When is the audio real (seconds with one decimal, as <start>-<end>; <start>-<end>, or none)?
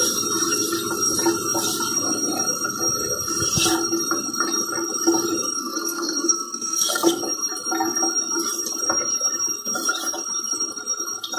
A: 0.0-5.6; 7.2-11.4